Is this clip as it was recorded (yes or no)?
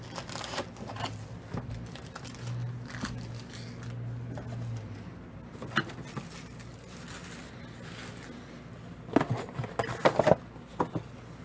yes